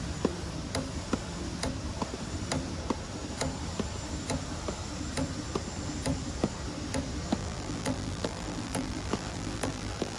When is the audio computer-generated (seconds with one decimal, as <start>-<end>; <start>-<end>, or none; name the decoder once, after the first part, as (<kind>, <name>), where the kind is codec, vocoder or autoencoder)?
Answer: 7.4-10.2 (vocoder, BigVGAN v2)